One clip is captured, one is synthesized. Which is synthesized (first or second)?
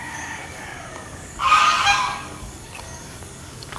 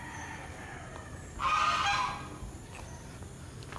first